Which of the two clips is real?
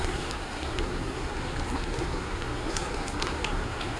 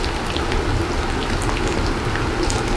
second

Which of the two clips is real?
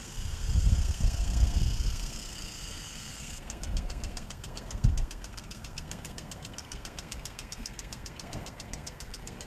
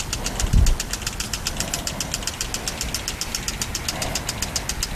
second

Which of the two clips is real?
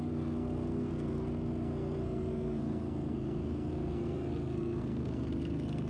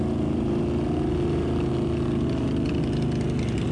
second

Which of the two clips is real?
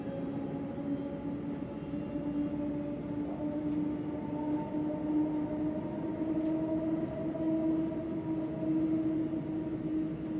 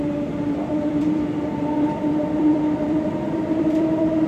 first